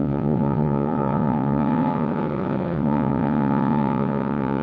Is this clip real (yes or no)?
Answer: no